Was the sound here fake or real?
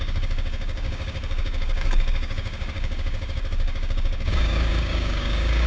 fake